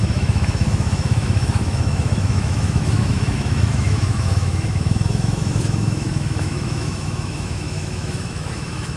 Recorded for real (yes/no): no